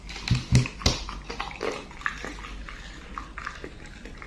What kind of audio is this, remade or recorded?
recorded